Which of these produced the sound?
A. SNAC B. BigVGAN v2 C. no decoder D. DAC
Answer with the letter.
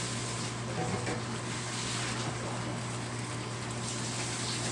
C